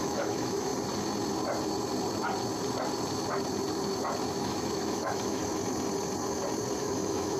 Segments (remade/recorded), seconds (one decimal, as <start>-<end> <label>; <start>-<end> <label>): 0.0-0.7 remade; 0.7-4.3 recorded; 4.3-5.4 remade; 5.4-6.8 recorded; 6.8-7.4 remade